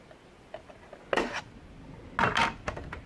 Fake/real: real